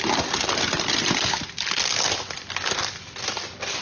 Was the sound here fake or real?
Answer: real